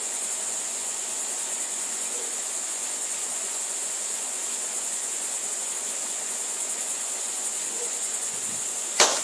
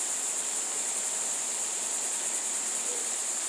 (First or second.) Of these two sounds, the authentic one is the second